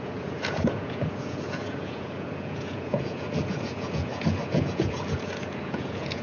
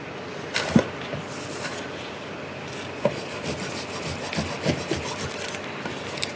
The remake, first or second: first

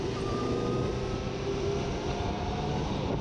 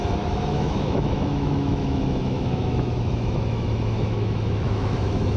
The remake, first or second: second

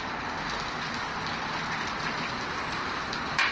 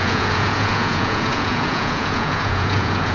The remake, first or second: second